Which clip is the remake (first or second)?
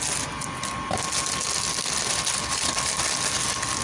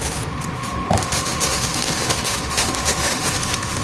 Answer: second